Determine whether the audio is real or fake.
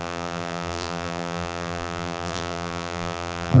fake